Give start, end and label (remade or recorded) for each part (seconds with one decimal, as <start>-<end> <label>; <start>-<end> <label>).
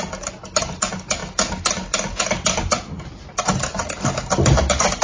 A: 0.0-5.0 recorded